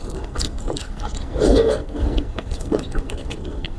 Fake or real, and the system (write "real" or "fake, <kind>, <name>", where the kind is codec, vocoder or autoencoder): fake, codec, SNAC